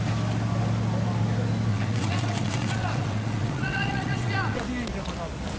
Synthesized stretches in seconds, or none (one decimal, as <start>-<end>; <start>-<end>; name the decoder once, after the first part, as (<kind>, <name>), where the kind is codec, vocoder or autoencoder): 1.7-4.6 (vocoder, WaveNeXt)

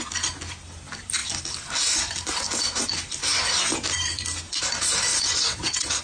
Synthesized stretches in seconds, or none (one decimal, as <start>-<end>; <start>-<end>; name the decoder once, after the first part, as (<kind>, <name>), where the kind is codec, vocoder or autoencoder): 5.1-6.0 (vocoder, WaveNeXt)